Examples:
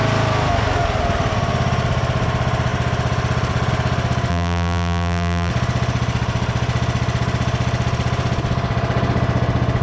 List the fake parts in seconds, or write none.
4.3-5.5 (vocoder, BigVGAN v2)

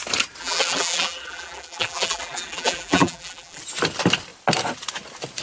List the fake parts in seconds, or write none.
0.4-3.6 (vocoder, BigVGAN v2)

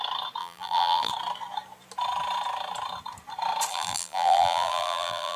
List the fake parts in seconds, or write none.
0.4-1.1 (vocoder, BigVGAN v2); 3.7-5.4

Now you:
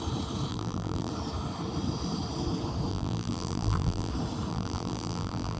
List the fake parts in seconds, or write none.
0.5-1.1 (vocoder, BigVGAN v2); 2.9-4.1; 4.5-5.6

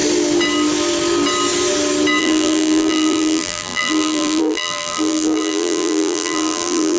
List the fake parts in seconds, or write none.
2.2-7.0 (vocoder, BigVGAN v2)

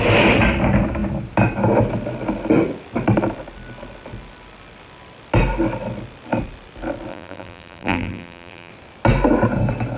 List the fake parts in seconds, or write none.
7.1-8.7 (vocoder, BigVGAN v2)

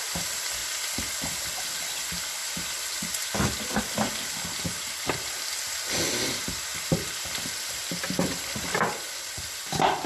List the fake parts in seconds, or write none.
0.0-0.6 (vocoder, BigVGAN v2); 1.6-6.7; 7.4-10.1